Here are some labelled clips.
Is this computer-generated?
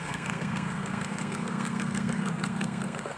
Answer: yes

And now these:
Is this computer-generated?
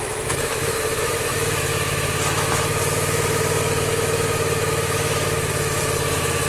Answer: yes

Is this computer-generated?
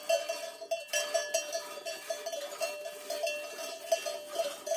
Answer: no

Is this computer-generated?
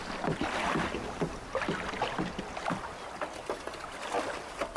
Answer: no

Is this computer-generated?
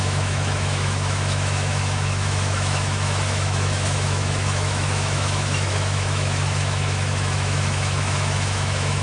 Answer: yes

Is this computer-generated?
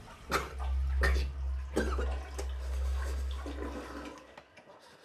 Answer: no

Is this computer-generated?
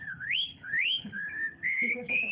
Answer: yes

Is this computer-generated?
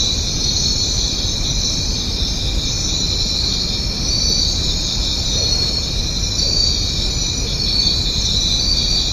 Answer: no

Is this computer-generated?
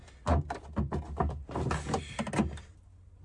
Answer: no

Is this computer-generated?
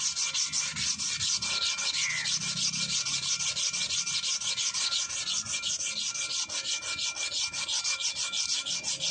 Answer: no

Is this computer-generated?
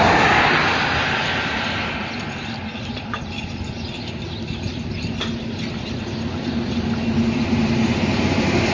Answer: no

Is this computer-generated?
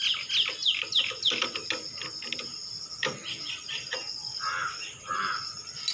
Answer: no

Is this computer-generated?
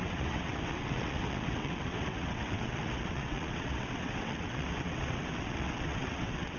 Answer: yes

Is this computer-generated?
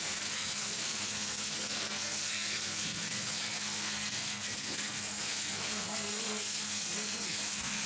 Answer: yes